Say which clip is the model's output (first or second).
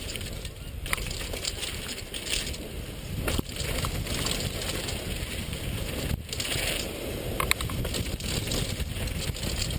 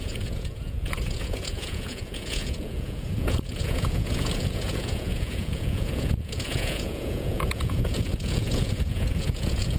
second